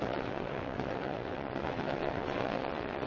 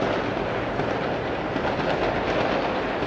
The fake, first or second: first